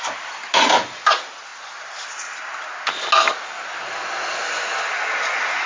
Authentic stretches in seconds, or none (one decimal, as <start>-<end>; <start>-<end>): 0.0-5.7